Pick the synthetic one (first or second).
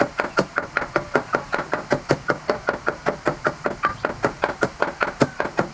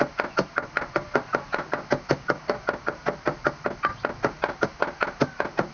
first